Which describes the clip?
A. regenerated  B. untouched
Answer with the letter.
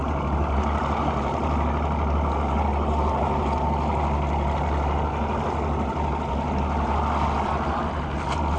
B